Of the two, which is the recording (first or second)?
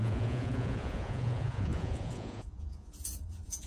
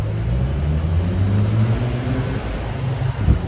second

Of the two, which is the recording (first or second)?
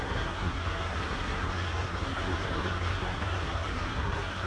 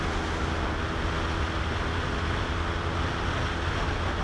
second